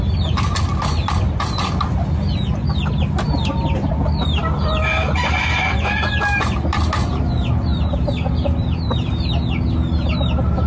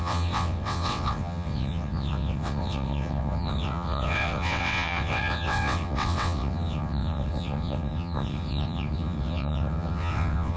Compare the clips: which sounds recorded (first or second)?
first